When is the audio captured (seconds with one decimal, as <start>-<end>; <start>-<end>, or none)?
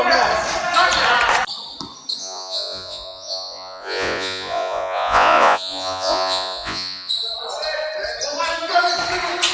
0.0-2.2; 7.1-9.5